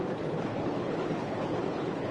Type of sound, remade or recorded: remade